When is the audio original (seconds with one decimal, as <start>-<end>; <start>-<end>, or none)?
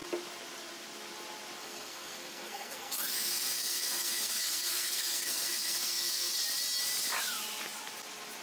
0.0-1.6; 6.3-8.4